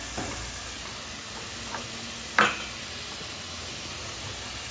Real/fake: real